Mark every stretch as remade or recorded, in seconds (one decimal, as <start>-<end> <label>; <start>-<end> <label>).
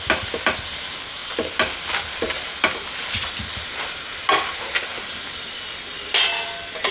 0.0-6.9 recorded